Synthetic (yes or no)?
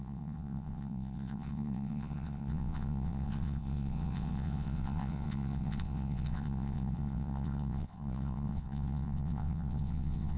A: yes